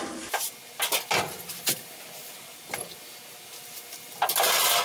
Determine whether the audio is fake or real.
real